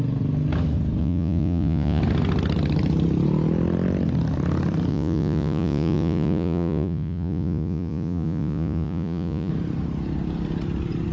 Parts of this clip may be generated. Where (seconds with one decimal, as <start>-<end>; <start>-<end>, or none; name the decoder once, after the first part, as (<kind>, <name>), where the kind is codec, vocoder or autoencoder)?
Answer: 1.0-2.0 (vocoder, Vocos); 4.9-9.5

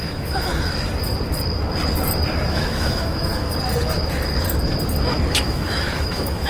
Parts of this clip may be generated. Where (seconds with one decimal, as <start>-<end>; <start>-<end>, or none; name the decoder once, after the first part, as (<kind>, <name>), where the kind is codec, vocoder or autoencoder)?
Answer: 0.0-0.5 (autoencoder, DAC-VAE); 2.5-3.5; 5.3-6.5

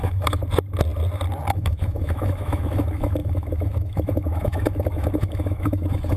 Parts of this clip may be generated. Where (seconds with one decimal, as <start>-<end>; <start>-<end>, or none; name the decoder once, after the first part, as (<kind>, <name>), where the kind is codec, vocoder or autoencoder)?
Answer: 0.0-0.4 (autoencoder, DAC-VAE); 1.5-6.2